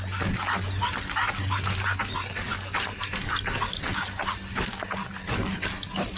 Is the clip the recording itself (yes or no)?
yes